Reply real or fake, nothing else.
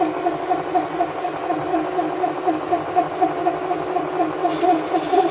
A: real